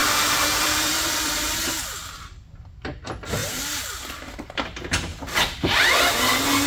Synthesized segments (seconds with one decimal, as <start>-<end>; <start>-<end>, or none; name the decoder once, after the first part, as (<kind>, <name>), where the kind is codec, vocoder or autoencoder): 0.0-1.6 (vocoder, BigVGAN v2); 3.4-4.1; 5.1-6.1